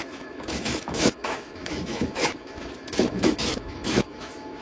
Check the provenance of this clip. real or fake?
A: fake